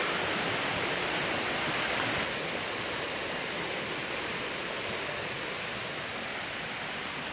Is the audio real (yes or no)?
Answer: yes